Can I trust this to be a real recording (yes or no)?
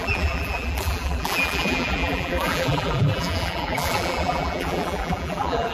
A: no